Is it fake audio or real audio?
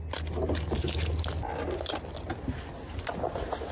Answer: real